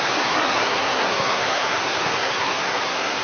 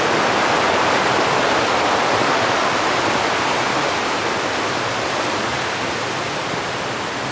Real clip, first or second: second